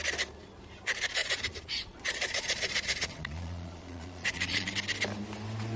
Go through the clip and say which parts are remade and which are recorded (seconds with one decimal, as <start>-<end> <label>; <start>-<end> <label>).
0.0-1.2 recorded; 1.2-4.7 remade; 4.7-5.8 recorded